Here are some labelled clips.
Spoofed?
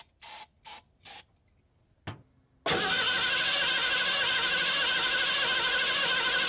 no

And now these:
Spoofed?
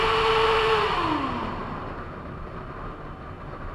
no